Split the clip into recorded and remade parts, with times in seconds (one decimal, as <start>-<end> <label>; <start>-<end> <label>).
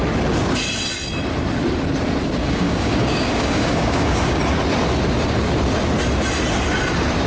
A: 0.0-2.4 recorded; 2.4-4.4 remade; 4.4-7.3 recorded